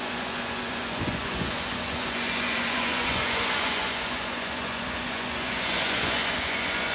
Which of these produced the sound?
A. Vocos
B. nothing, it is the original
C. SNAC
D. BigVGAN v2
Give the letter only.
A